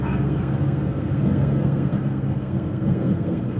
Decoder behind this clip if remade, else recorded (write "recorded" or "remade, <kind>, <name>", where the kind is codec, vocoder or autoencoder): remade, codec, SNAC